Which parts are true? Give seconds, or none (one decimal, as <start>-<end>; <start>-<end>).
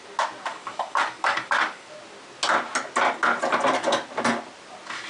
0.0-0.5; 1.9-5.1